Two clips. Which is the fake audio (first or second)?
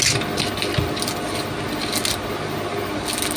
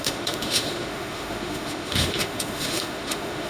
second